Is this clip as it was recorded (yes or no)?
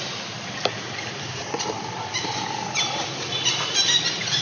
no